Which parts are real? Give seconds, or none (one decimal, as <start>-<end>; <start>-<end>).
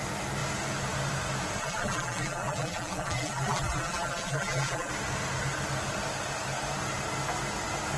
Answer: 0.0-1.6; 4.9-8.0